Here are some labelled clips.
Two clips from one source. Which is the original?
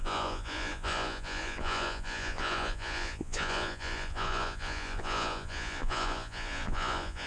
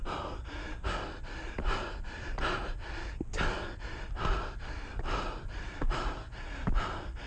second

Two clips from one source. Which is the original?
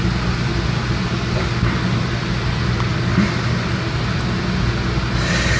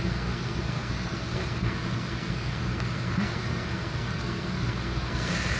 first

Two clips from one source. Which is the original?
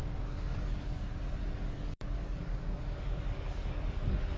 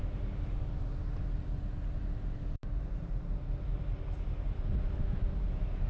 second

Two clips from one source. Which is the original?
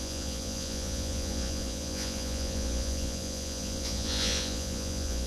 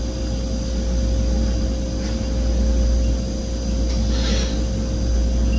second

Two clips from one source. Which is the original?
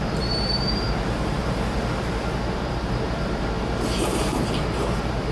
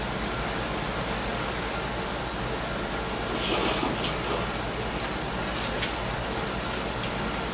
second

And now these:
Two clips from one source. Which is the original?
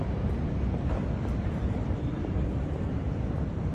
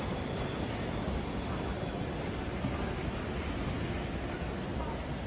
second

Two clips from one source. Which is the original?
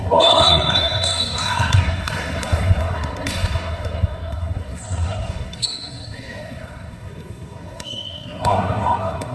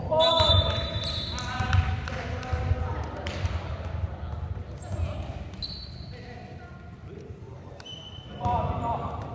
second